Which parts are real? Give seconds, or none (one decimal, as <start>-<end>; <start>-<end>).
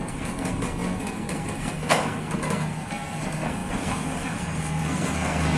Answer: none